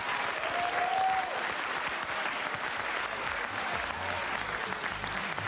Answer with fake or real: real